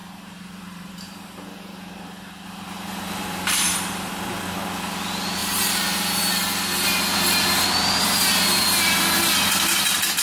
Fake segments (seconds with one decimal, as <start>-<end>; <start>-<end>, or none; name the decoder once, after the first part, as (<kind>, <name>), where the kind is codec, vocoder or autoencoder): 0.0-4.1 (vocoder, BigVGAN v2); 5.4-6.2